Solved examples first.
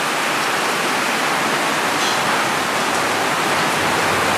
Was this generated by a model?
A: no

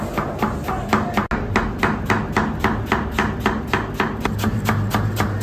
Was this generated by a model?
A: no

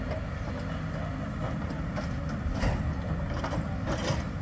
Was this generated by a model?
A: no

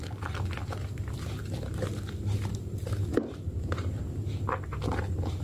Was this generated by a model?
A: no